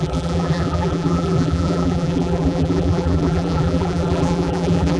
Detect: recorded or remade remade